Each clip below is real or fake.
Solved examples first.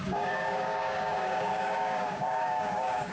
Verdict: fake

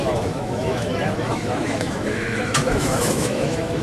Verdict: fake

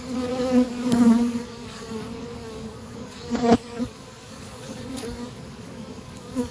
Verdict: fake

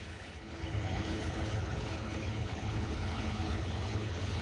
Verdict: fake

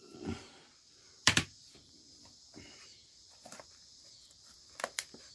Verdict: fake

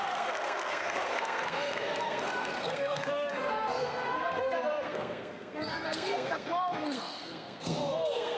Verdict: fake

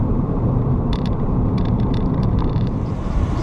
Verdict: fake